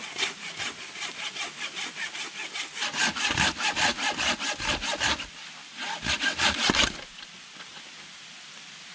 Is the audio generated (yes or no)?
no